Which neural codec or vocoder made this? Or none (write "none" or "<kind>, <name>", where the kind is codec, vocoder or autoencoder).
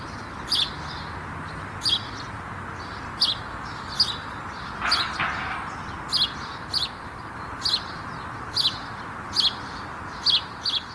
none